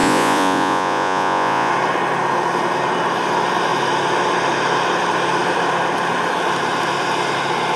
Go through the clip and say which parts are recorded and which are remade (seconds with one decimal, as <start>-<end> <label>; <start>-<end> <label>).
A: 0.0-1.7 remade; 1.7-7.8 recorded